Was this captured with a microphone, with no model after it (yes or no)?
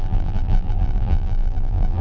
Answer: no